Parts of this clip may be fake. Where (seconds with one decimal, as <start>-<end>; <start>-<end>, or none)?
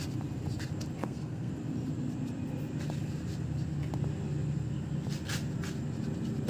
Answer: 1.0-1.5